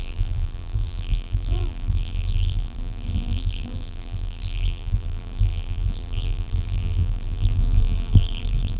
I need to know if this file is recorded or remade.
remade